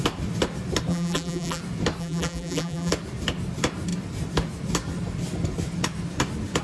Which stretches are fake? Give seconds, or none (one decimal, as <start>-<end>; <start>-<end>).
0.9-1.6; 2.0-2.9